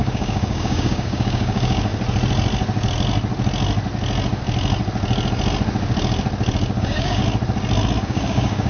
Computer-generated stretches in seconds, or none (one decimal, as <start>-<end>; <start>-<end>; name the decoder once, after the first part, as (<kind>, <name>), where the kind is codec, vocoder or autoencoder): 0.0-1.9 (codec, DAC); 6.8-7.2; 8.0-8.7